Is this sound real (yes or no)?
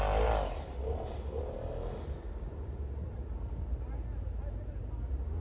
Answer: yes